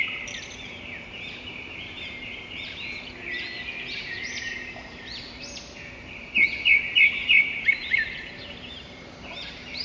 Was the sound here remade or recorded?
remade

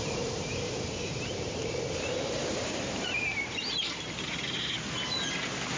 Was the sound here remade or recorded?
remade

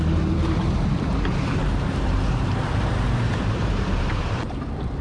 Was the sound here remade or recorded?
remade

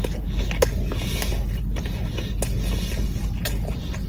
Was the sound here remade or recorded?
recorded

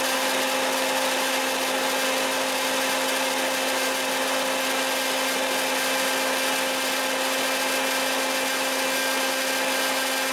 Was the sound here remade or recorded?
recorded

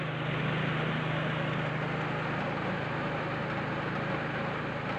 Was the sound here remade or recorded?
recorded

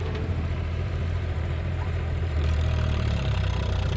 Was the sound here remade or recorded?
remade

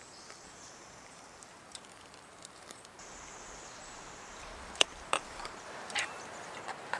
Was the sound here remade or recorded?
remade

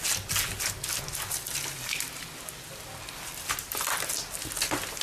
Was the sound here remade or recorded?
recorded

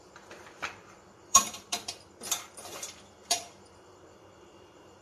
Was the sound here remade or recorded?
remade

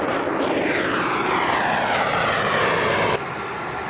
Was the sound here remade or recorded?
remade